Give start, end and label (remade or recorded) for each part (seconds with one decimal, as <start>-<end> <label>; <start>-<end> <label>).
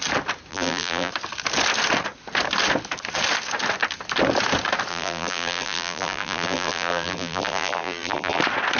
0.0-0.5 recorded; 0.5-1.1 remade; 1.1-4.9 recorded; 4.9-8.4 remade; 8.4-8.8 recorded